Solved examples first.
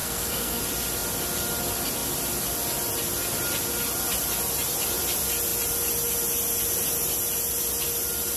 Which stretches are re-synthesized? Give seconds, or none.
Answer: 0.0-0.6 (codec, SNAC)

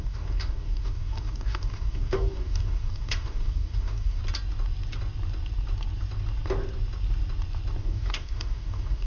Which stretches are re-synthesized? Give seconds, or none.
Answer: 0.0-4.2 (codec, DAC); 7.8-9.1

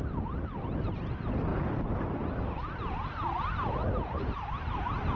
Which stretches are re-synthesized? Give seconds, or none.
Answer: none

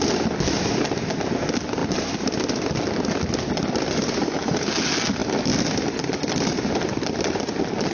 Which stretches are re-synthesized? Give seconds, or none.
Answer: none

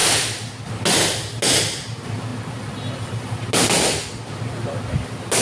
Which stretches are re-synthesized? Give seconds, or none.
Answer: none

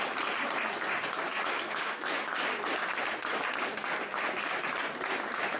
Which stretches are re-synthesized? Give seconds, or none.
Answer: 1.3-2.3 (autoencoder, DAC-VAE)